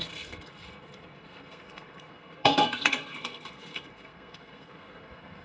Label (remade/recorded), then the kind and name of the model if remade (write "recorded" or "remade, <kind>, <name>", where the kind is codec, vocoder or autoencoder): remade, codec, SNAC